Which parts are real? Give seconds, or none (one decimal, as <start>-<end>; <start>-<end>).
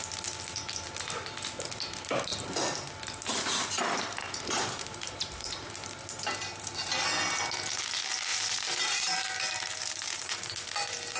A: 0.0-4.2; 5.7-8.3; 10.4-11.2